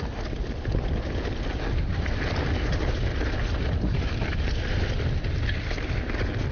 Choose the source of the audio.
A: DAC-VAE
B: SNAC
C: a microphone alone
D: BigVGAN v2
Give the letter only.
C